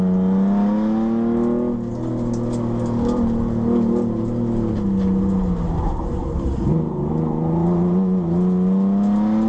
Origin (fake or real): real